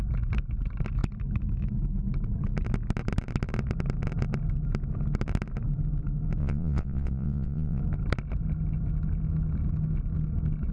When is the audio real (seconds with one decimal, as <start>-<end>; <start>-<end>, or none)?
0.0-6.4; 7.8-10.7